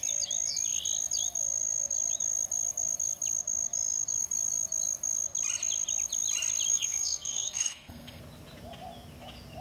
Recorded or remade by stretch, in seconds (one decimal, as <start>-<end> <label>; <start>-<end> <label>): 0.0-6.7 recorded; 6.7-8.2 remade; 8.2-9.6 recorded